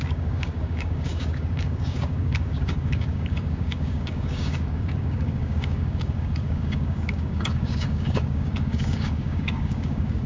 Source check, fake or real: fake